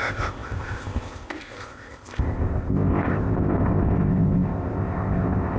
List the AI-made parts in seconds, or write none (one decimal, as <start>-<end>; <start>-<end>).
0.0-5.6